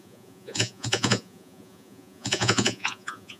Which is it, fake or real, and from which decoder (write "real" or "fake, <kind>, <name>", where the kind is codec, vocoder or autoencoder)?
fake, vocoder, Vocos